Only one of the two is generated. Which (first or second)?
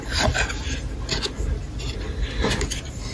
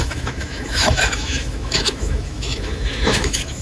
second